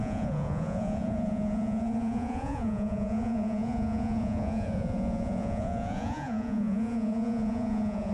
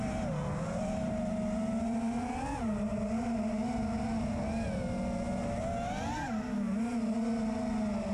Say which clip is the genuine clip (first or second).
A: second